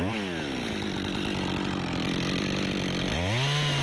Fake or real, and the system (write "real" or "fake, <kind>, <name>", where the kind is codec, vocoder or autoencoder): real